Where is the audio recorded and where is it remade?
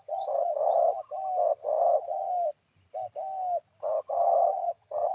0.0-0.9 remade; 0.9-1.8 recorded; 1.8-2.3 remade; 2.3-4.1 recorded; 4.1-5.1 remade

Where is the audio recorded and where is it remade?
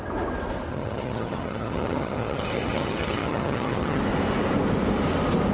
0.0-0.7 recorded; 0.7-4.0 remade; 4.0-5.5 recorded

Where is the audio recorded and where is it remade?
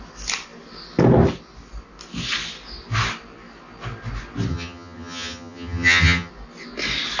0.0-4.5 recorded; 4.5-6.3 remade; 6.3-7.2 recorded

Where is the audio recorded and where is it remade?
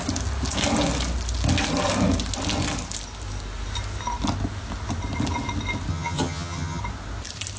0.0-5.9 recorded; 5.9-6.8 remade; 6.8-7.6 recorded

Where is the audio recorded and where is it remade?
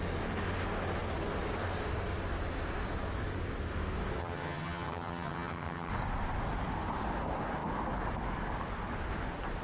0.0-4.2 recorded; 4.2-5.9 remade; 5.9-9.6 recorded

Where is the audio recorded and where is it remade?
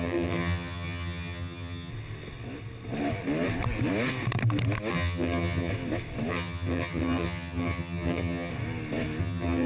0.0-1.9 remade; 1.9-4.9 recorded; 4.9-5.7 remade; 5.7-6.3 recorded; 6.3-8.5 remade; 8.5-9.2 recorded; 9.2-9.7 remade